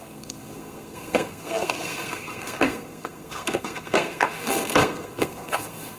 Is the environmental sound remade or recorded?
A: remade